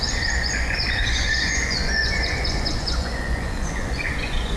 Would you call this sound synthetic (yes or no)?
yes